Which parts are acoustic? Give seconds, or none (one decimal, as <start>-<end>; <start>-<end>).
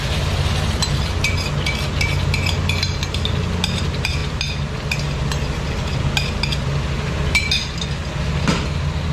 0.0-9.1